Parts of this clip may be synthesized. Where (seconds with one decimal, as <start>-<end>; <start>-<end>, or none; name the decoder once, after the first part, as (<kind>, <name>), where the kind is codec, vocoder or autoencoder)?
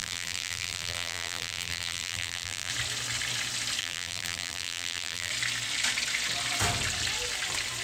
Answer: 0.0-2.7 (vocoder, BigVGAN v2); 3.8-5.3